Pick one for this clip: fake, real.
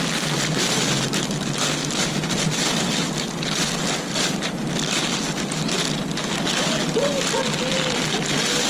real